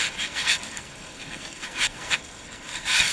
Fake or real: fake